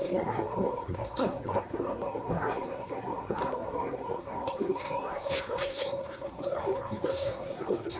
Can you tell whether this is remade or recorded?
remade